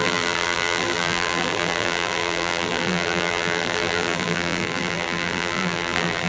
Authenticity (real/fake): fake